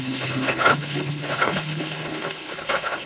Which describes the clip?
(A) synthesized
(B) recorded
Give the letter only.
A